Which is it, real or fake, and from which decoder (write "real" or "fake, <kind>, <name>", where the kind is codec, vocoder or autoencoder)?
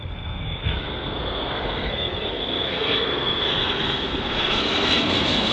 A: fake, codec, SNAC